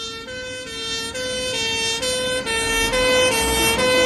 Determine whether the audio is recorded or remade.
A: recorded